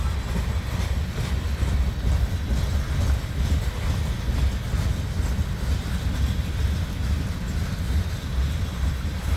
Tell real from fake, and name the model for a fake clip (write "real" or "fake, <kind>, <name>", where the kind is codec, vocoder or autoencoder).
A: real